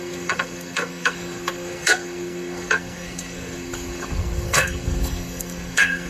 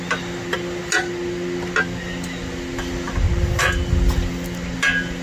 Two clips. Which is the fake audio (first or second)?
first